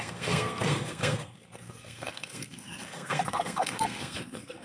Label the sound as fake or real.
fake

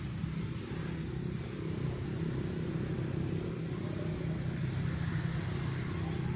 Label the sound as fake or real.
real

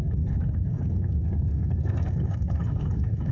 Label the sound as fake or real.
fake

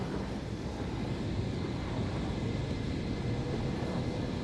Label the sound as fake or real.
real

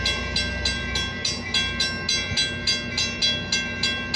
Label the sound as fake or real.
real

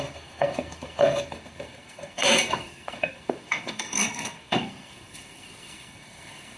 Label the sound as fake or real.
fake